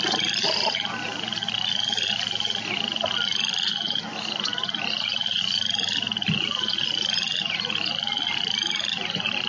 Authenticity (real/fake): real